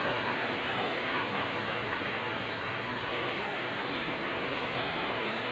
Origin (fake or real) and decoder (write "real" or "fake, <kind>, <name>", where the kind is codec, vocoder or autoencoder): fake, codec, SNAC